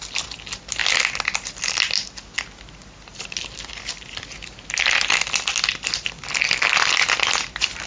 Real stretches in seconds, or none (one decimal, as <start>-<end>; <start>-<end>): 0.0-7.9